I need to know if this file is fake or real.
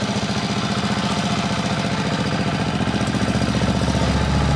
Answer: real